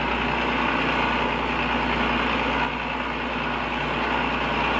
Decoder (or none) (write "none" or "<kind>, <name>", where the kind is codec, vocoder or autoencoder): none